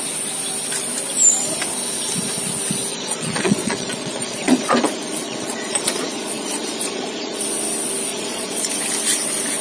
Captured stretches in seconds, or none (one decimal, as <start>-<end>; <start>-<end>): 0.0-2.9; 7.4-8.1; 8.7-9.6